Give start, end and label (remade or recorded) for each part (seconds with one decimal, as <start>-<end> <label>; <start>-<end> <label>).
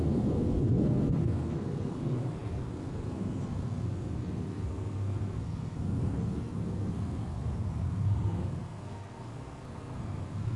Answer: 0.0-10.6 remade